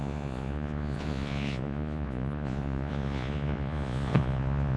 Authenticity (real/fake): fake